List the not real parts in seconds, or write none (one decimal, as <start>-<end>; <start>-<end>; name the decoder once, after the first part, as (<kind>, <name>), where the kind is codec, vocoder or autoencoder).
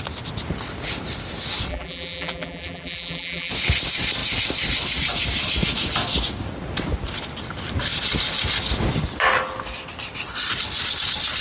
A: 1.7-3.5 (vocoder, BigVGAN v2)